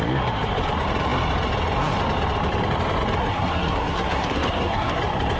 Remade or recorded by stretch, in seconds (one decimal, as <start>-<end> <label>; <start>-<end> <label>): 0.0-3.2 recorded; 3.2-5.0 remade; 5.0-5.4 recorded

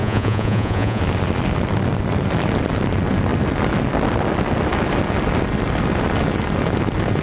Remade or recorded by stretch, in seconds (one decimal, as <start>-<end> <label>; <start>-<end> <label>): 0.0-1.0 remade; 1.0-7.2 recorded

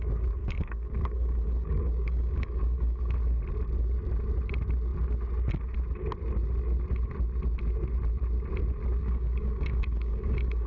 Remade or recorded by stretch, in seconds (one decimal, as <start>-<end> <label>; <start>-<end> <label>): 0.0-0.4 recorded; 0.4-3.1 remade; 3.1-9.0 recorded; 9.0-10.7 remade

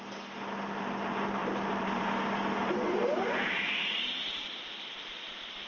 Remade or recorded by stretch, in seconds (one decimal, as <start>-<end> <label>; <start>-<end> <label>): 0.0-1.4 recorded; 1.4-2.1 remade; 2.1-3.0 recorded; 3.0-5.7 remade

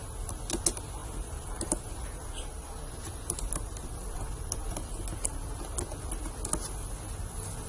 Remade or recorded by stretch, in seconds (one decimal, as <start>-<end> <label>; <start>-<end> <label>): 0.0-1.0 recorded; 1.0-5.6 remade; 5.6-7.7 recorded

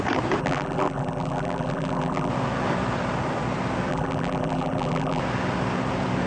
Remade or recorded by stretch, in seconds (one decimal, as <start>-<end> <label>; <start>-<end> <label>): 0.0-0.4 recorded; 0.4-2.3 remade; 2.3-3.9 recorded; 3.9-5.2 remade; 5.2-6.3 recorded

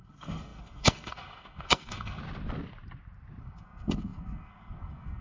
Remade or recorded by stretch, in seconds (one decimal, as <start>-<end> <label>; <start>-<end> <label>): 0.0-2.2 remade; 2.2-3.4 recorded; 3.4-5.2 remade